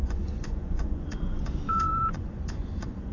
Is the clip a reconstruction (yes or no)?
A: yes